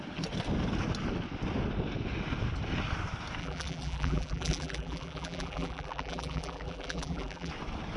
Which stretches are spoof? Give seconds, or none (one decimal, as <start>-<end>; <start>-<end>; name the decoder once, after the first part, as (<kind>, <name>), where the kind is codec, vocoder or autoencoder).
3.4-7.5 (vocoder, BigVGAN v2)